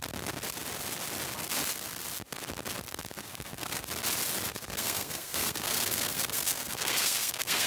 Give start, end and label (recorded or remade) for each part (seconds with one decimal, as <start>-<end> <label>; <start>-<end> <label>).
0.0-3.2 recorded; 3.2-3.8 remade; 3.8-4.5 recorded; 4.5-7.7 remade